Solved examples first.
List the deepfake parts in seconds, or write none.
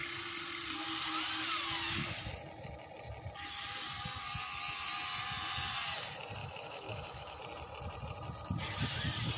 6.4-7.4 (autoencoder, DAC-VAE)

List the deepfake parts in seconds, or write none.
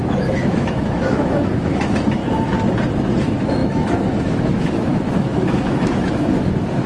0.0-2.2 (autoencoder, DAC-VAE); 3.2-6.9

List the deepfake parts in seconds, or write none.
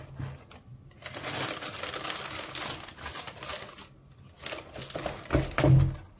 none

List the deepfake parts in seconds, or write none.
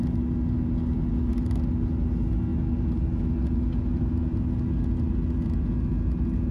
none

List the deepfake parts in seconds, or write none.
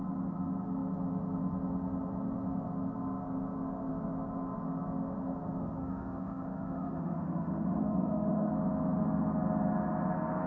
5.8-8.5 (autoencoder, DAC-VAE)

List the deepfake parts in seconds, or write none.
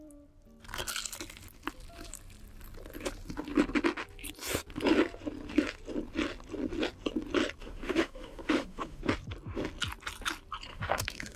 7.6-9.0 (autoencoder, DAC-VAE); 10.7-11.4